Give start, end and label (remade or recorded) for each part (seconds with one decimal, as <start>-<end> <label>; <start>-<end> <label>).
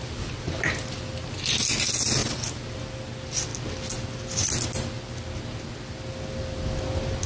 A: 0.0-7.3 recorded